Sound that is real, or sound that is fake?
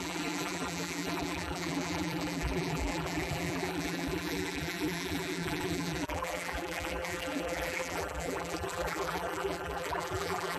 fake